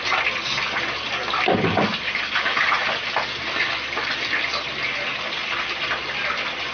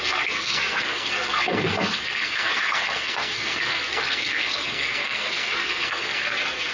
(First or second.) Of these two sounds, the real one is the first